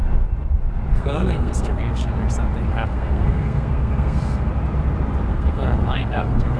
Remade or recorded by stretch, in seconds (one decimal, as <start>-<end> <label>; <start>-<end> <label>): 0.0-0.9 recorded; 0.9-2.1 remade; 2.1-2.7 recorded; 2.7-4.5 remade; 4.5-5.3 recorded; 5.3-6.6 remade